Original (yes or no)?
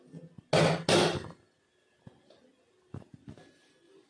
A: yes